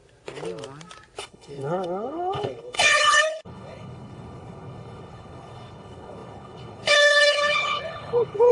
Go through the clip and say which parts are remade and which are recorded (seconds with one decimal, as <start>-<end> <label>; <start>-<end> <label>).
0.0-1.2 recorded; 1.2-8.5 remade